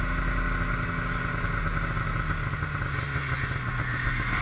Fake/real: real